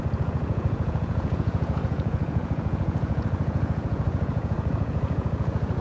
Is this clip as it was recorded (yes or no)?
no